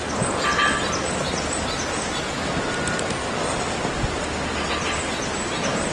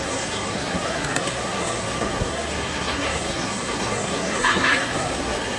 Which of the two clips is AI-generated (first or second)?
second